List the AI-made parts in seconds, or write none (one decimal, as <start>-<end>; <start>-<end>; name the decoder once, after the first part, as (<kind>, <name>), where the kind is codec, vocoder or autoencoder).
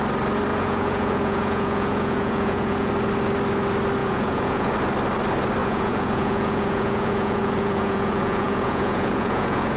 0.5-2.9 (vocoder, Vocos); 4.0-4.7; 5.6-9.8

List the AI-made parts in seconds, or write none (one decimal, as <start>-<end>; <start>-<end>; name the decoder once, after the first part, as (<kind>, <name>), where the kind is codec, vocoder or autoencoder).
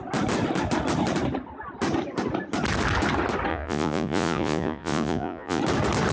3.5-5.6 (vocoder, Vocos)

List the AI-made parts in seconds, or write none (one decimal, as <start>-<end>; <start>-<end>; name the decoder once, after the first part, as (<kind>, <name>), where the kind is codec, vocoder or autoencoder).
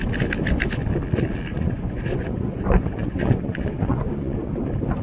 1.5-4.5 (vocoder, Vocos)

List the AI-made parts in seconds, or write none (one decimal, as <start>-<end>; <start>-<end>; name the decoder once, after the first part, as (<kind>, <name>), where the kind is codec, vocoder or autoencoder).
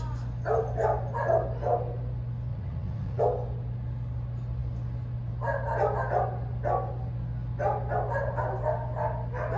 2.5-3.2 (vocoder, Vocos)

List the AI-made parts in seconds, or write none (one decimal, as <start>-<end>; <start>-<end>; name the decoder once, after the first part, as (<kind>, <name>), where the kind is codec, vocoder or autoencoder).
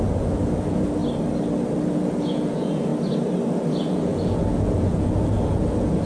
0.0-1.0 (vocoder, Vocos); 1.8-2.9; 3.7-6.1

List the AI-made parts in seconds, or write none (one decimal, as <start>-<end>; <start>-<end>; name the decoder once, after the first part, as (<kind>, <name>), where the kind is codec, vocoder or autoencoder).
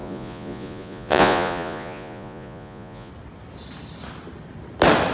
0.0-3.1 (vocoder, Vocos)